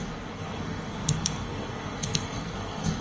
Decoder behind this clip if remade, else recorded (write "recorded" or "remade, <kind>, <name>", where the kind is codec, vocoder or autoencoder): remade, codec, SNAC